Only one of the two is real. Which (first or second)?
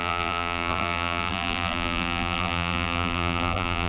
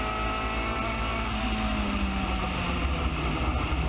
second